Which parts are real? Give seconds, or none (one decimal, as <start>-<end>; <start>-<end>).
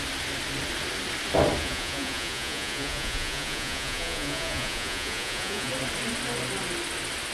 0.0-1.6; 5.7-7.3